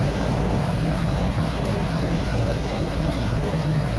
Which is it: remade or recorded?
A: remade